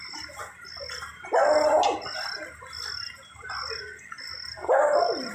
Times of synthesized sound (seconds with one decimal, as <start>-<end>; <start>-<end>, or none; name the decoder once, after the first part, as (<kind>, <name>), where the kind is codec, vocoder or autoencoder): none